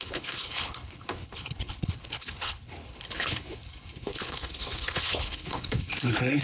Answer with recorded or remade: remade